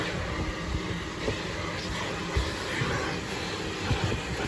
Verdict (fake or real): real